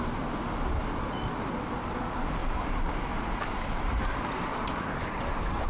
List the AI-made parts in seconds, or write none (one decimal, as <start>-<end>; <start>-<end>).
2.4-5.7

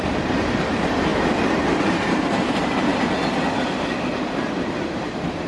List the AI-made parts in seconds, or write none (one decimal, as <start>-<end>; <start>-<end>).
0.0-1.1; 1.8-2.9; 4.3-5.5

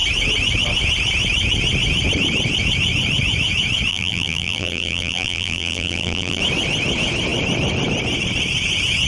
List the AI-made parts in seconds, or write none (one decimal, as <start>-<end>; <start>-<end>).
3.9-6.4

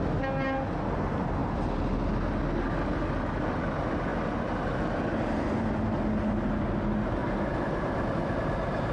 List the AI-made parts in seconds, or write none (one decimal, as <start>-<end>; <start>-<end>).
7.2-8.0

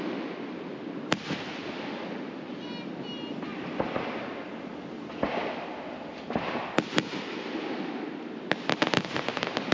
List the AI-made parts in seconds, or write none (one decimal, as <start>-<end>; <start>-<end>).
none